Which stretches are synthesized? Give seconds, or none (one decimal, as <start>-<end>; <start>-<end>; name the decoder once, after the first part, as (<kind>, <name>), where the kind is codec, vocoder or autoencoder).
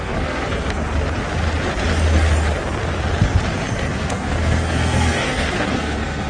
0.0-0.8 (codec, SNAC); 3.9-6.3